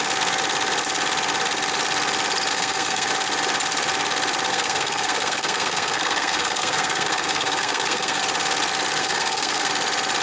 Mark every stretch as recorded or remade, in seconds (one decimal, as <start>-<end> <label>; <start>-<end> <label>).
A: 0.0-2.5 recorded; 2.5-3.1 remade; 3.1-4.5 recorded; 4.5-8.2 remade; 8.2-9.0 recorded; 9.0-9.7 remade; 9.7-10.2 recorded